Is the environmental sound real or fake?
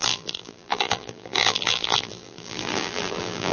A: fake